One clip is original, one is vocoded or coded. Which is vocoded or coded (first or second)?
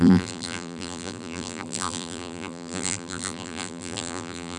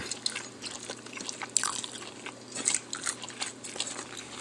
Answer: first